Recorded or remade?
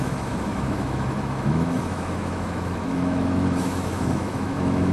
remade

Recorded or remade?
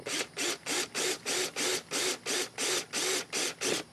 recorded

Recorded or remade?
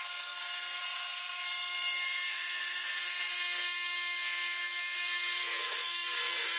remade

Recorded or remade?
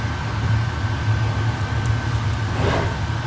recorded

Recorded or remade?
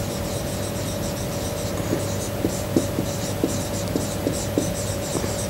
recorded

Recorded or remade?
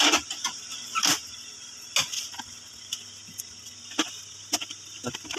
recorded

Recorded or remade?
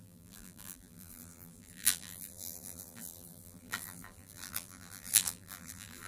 remade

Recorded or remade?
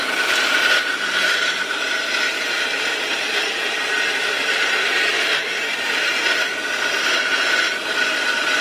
remade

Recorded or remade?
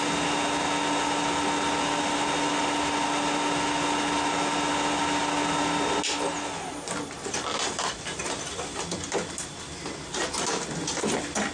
recorded